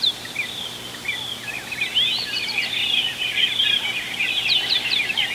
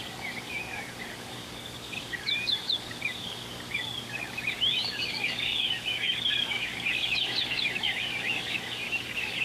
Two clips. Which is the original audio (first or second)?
first